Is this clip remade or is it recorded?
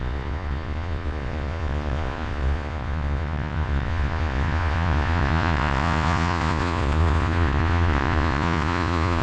remade